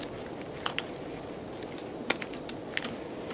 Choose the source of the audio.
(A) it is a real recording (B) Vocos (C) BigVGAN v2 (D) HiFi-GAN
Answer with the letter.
A